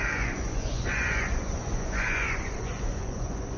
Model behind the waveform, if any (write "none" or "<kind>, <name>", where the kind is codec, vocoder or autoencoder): vocoder, Vocos